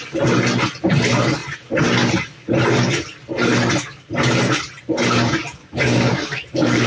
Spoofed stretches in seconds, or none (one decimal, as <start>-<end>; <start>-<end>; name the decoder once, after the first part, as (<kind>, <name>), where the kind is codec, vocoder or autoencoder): 5.6-6.9 (codec, DAC)